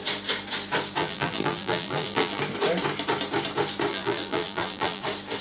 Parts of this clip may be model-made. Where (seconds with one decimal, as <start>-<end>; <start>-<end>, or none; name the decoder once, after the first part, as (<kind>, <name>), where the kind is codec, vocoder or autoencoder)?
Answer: 1.0-2.4 (vocoder, BigVGAN v2); 3.9-5.0

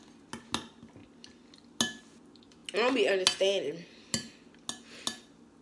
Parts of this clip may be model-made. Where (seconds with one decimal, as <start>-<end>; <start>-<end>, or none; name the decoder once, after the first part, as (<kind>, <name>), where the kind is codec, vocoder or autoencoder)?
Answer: none

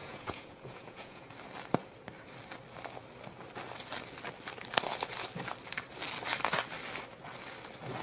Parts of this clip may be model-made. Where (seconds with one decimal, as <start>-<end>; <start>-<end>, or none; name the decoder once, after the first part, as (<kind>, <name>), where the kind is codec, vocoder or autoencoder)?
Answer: 0.0-1.3 (vocoder, Vocos)

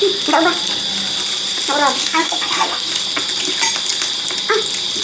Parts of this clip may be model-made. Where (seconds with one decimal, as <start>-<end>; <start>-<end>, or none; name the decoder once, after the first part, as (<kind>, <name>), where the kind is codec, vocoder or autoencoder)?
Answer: 2.0-2.9 (codec, SNAC)

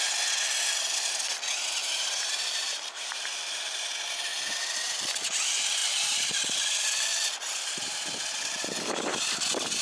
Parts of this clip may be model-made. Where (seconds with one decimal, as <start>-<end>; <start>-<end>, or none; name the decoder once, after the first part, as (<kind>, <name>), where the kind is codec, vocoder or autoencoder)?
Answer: 1.8-3.2 (vocoder, BigVGAN v2); 4.3-5.0